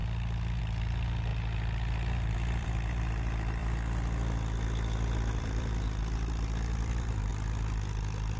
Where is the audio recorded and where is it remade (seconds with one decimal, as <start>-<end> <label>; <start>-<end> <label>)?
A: 0.0-0.6 recorded; 0.6-3.6 remade; 3.6-5.4 recorded; 5.4-7.3 remade; 7.3-8.4 recorded